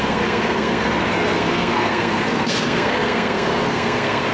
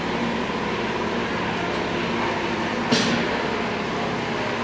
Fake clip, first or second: first